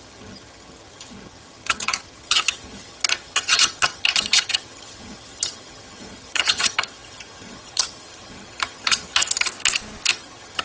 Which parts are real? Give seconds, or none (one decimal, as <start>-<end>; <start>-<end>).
9.5-10.1